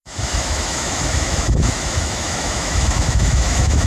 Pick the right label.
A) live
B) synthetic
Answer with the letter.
B